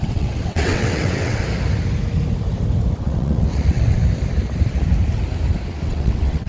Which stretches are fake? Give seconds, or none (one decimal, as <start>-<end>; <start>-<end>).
0.0-1.4; 3.0-4.0; 5.8-6.5